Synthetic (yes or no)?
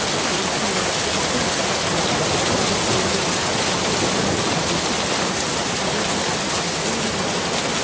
no